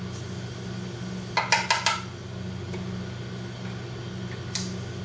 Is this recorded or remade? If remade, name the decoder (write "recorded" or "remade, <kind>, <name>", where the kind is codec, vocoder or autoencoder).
recorded